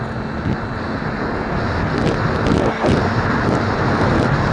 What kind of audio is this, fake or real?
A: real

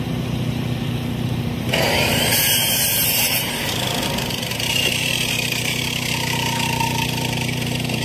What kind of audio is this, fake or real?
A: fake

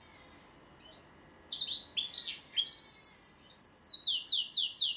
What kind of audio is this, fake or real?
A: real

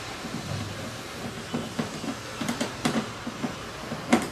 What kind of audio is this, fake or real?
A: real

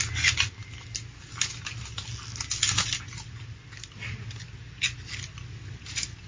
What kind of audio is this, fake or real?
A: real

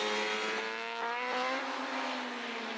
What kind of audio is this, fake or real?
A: real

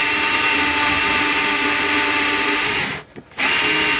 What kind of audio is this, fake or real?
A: real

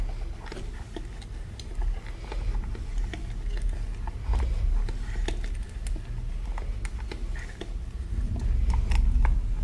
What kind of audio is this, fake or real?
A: real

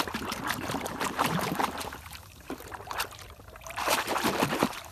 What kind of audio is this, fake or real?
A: fake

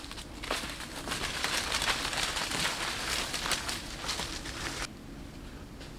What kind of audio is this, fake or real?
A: real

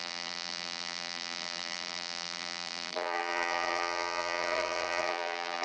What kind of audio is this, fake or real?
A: fake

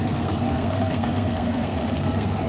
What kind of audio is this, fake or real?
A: fake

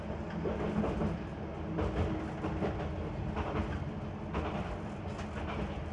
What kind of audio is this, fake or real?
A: real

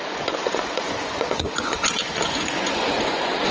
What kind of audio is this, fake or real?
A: fake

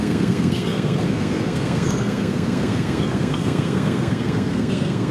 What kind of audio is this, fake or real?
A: fake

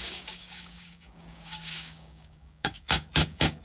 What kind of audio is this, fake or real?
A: fake